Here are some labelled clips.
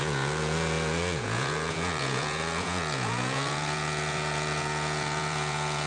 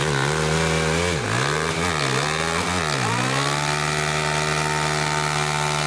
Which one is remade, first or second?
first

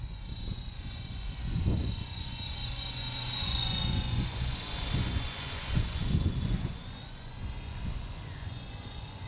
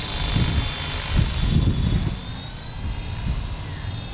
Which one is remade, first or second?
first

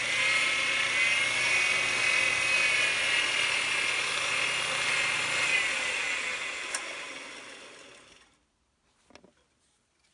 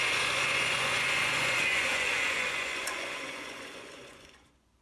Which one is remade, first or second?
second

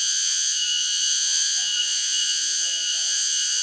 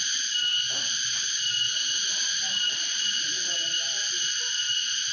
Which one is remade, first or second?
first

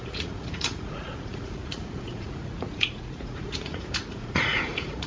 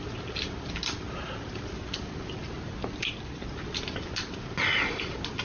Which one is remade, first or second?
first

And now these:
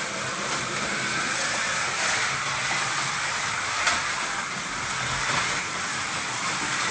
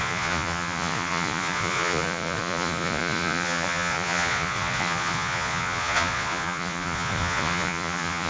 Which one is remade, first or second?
second